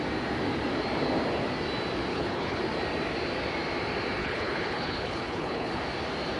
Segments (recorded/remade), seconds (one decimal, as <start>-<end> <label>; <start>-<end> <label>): 0.0-2.1 recorded; 2.1-2.6 remade; 2.6-4.2 recorded; 4.2-5.8 remade; 5.8-6.4 recorded